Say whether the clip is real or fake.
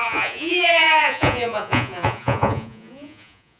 fake